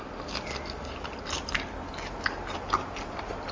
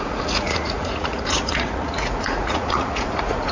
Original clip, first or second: first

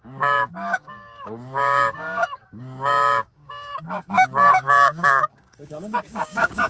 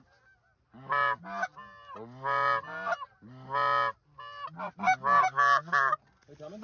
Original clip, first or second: second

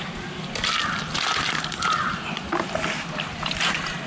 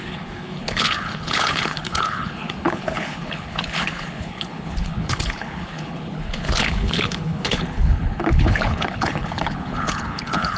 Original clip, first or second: first